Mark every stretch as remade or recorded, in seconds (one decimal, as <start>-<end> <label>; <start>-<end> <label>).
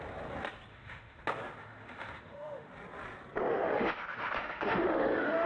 0.0-0.7 recorded; 0.7-1.2 remade; 1.2-1.6 recorded; 1.6-2.7 remade; 2.7-3.5 recorded; 3.5-5.5 remade